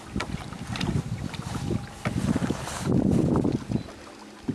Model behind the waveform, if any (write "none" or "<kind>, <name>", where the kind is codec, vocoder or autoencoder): none